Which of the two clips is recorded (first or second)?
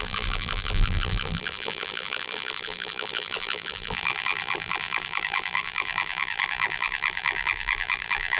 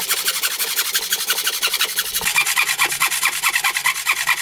second